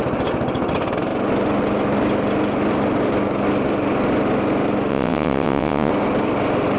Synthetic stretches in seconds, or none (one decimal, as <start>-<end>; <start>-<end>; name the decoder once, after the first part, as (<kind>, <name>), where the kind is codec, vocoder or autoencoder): 4.9-5.9 (vocoder, WaveNeXt)